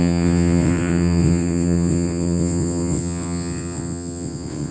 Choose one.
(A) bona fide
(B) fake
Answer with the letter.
B